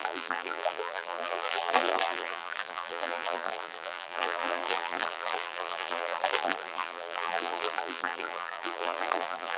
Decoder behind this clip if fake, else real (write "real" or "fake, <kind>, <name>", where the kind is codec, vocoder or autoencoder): fake, vocoder, BigVGAN v2